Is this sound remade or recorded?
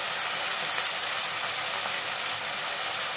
remade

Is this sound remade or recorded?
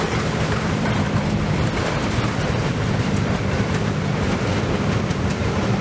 remade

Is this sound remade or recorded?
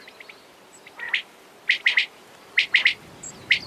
recorded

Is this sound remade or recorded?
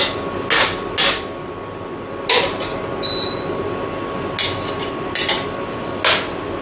recorded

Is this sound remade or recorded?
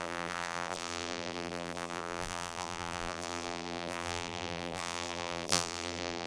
remade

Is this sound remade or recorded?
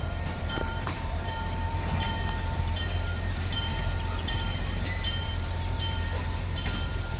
remade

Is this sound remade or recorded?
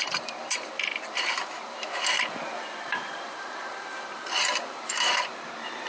remade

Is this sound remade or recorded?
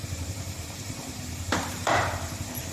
remade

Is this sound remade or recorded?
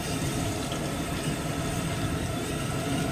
remade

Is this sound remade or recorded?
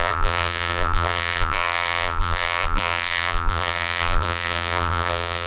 remade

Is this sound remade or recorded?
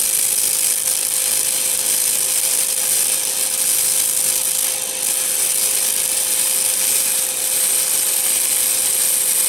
recorded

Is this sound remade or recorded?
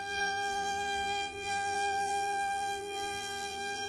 remade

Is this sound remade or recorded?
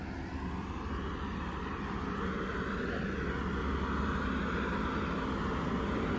recorded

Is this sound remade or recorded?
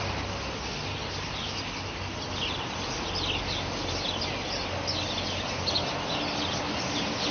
recorded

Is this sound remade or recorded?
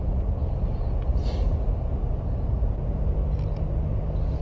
recorded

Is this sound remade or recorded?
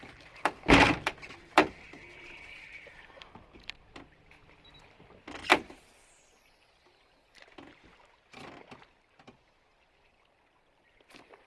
remade